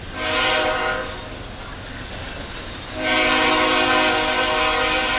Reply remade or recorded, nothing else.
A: recorded